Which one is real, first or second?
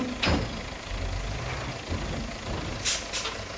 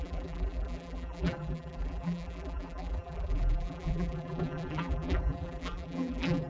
first